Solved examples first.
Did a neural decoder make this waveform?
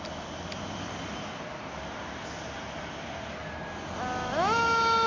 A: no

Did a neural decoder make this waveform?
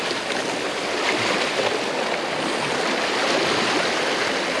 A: no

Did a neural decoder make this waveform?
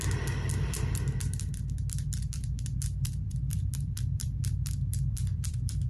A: yes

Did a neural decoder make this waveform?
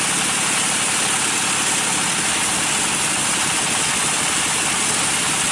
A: no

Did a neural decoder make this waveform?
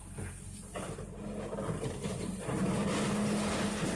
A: no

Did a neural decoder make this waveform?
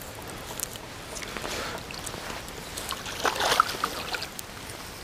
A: no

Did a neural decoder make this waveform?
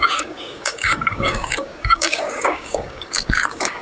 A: yes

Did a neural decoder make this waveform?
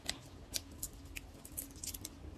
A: no